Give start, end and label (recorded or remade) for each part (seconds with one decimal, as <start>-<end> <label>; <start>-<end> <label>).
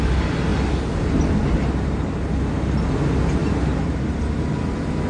0.0-5.1 recorded